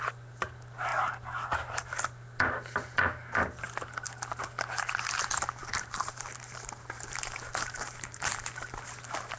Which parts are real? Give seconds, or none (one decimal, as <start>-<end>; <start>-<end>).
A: 0.0-5.6; 8.8-9.4